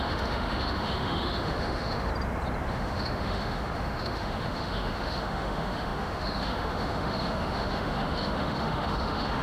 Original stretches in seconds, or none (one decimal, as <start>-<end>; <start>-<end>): 2.1-2.7